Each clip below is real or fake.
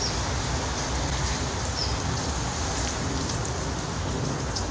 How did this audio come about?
real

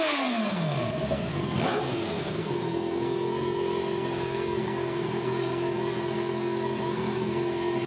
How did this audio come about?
fake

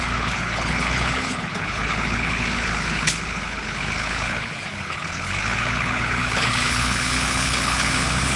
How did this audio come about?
fake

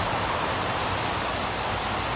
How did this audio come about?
real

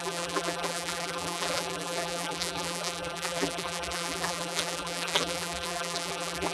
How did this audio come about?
fake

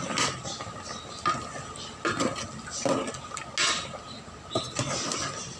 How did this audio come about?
real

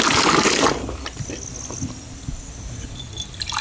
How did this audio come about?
real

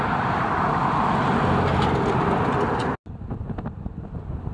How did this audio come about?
real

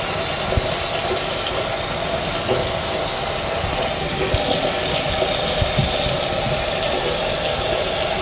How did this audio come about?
real